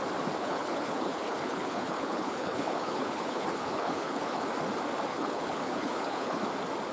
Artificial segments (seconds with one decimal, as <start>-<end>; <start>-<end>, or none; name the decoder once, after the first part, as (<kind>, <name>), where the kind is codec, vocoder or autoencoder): 0.4-4.5 (codec, HILCodec); 5.1-6.4